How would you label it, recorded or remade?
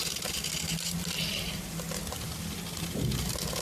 recorded